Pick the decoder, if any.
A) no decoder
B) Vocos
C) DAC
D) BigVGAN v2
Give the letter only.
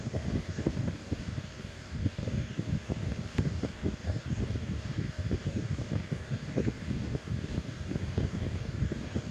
C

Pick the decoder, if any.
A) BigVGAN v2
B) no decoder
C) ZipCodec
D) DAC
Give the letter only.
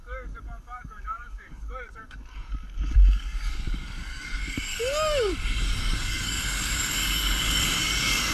D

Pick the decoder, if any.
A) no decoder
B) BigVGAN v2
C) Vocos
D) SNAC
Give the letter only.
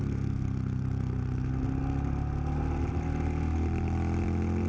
A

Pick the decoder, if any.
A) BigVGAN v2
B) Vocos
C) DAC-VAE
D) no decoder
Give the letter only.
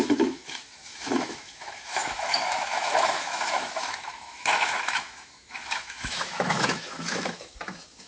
C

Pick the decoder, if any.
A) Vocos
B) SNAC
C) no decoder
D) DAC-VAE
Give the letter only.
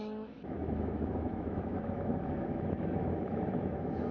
D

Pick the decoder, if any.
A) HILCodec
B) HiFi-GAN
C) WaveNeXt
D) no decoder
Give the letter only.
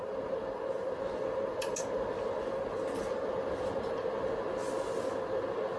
D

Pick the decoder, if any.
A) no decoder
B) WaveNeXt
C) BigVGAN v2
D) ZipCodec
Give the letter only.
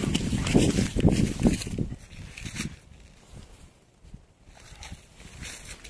A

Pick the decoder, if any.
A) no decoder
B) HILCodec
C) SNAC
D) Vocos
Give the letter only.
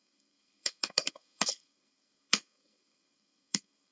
C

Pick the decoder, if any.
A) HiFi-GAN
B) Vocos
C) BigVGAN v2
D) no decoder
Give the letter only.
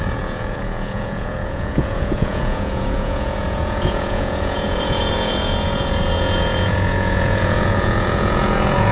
B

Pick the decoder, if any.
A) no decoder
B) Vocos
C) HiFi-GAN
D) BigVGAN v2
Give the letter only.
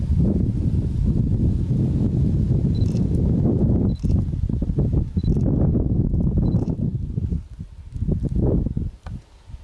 A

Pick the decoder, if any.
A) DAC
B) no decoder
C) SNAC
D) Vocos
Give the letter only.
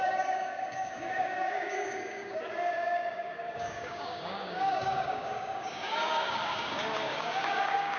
A